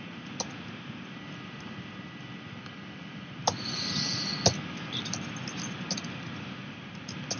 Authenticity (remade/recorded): recorded